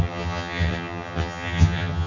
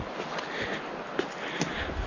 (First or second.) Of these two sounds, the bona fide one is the second